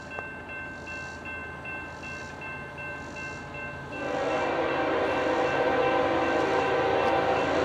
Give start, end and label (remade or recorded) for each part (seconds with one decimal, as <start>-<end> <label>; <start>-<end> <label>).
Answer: 0.0-1.4 recorded; 1.4-2.7 remade; 2.7-7.6 recorded